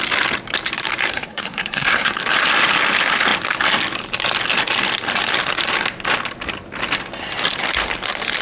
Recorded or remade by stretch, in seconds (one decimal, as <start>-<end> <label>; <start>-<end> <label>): 0.0-1.1 recorded; 1.1-2.2 remade; 2.2-8.4 recorded